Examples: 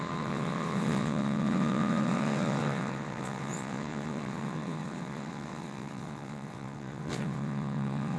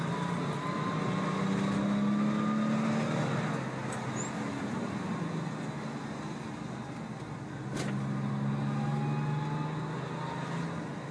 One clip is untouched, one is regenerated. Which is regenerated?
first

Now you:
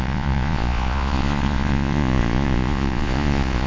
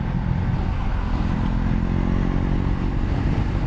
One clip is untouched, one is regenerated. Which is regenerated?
first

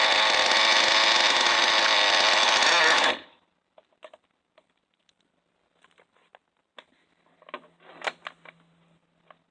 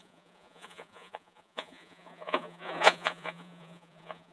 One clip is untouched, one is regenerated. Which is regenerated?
second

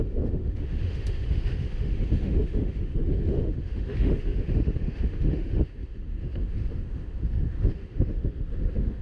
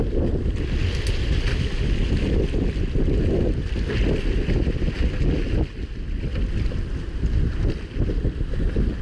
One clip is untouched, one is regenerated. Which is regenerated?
first